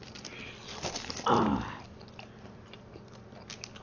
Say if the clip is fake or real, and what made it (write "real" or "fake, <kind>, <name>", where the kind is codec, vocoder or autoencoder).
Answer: real